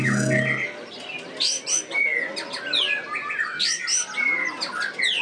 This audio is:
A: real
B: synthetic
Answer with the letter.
A